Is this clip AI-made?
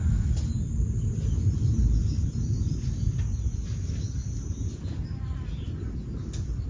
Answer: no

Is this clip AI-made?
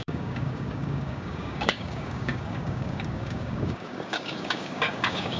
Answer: yes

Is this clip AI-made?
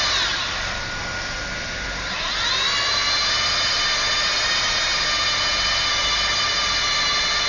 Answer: no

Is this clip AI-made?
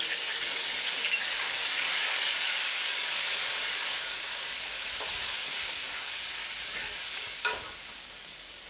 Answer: yes